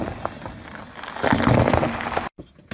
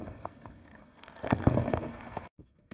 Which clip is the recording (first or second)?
first